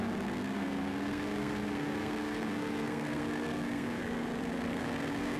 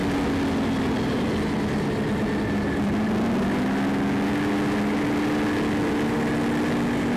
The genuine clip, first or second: second